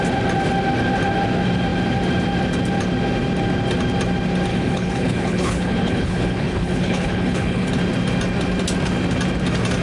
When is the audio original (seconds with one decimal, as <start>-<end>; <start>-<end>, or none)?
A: 0.0-4.5; 7.7-9.8